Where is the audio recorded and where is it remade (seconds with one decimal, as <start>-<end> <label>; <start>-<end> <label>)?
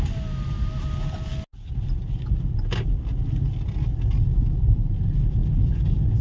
0.0-5.4 recorded; 5.4-6.2 remade